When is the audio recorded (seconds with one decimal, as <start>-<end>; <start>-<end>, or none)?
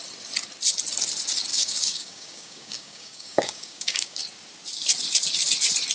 0.0-1.5; 4.2-5.9